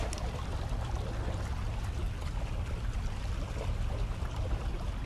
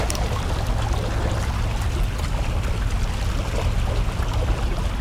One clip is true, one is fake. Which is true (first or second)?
second